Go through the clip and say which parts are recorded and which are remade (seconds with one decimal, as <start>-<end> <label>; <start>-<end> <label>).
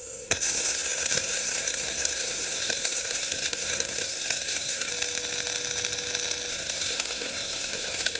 0.0-4.9 remade; 4.9-6.5 recorded; 6.5-8.2 remade